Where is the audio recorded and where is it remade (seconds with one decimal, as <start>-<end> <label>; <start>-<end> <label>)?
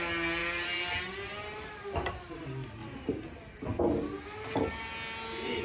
0.0-0.4 recorded; 0.4-1.0 remade; 1.0-5.6 recorded